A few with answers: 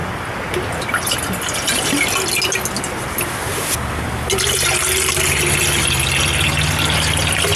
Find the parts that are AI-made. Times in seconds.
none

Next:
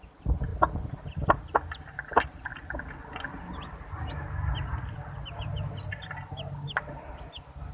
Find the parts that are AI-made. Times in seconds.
0.0-2.5 (vocoder, BigVGAN v2); 7.1-7.7

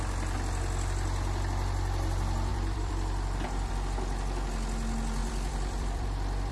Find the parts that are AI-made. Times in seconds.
2.5-3.7 (vocoder, BigVGAN v2); 5.2-6.5

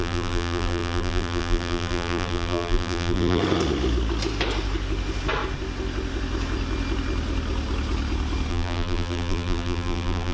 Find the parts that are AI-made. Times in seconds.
0.0-3.4 (vocoder, BigVGAN v2); 8.5-10.3

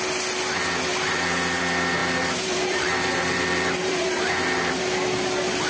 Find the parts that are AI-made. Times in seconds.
0.9-1.6 (vocoder, BigVGAN v2); 2.0-4.8

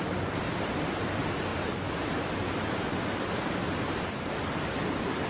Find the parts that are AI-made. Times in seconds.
0.0-5.3 (vocoder, BigVGAN v2)

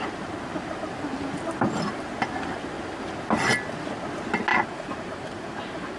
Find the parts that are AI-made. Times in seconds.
4.5-6.0 (vocoder, BigVGAN v2)

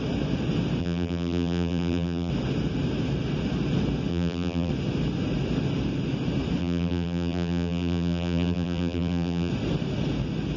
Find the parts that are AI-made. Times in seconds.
0.8-2.3 (vocoder, BigVGAN v2); 4.1-4.7; 6.6-9.5